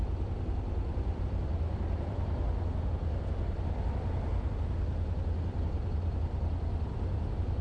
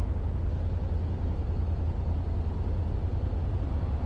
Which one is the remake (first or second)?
first